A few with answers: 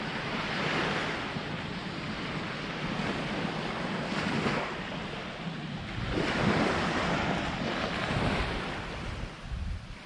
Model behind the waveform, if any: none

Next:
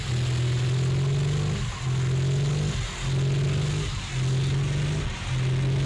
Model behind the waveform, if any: none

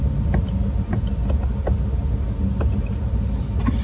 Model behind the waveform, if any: none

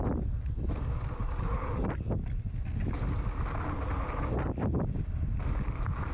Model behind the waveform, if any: none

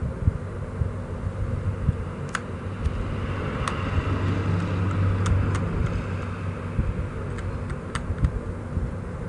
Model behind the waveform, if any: none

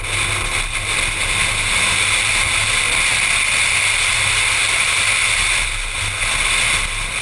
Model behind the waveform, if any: none